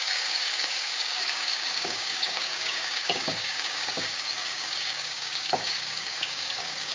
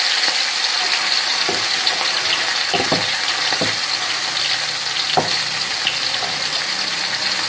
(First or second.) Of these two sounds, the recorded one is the second